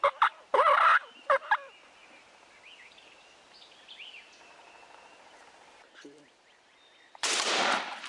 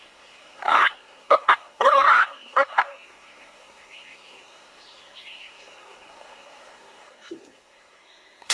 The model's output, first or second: second